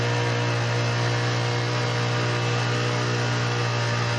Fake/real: real